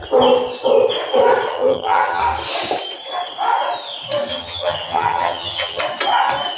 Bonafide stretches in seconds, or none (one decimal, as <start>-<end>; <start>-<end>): 0.0-1.5; 2.2-4.3; 5.8-6.6